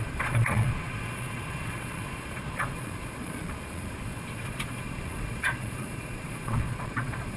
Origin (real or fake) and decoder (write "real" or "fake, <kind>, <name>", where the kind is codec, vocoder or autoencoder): fake, vocoder, Vocos